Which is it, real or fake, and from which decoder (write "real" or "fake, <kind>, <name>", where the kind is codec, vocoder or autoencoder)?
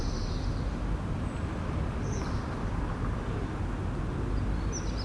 real